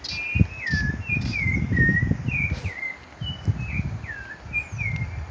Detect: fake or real real